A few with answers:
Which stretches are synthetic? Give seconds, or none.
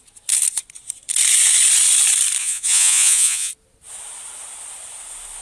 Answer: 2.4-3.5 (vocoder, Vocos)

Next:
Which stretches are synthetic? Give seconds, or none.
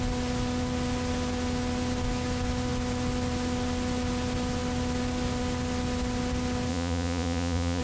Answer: 6.7-7.8 (vocoder, Vocos)